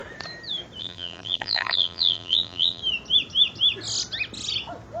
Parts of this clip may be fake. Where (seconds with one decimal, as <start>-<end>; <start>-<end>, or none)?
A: 0.8-2.8